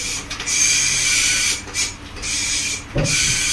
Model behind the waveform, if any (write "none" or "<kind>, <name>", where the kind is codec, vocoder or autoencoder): vocoder, BigVGAN v2